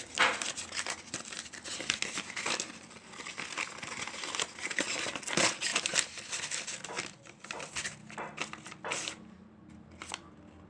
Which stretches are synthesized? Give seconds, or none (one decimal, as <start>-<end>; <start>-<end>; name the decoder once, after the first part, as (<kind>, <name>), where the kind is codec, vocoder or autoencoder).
none